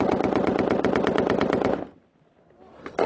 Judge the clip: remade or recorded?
recorded